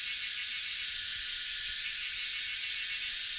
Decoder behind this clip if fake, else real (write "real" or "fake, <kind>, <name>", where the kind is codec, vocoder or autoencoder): fake, vocoder, Vocos